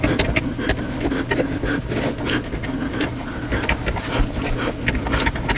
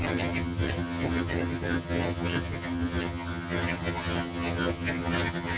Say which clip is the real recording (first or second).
first